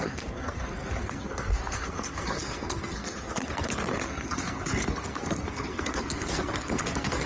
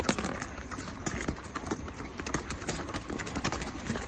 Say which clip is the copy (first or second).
first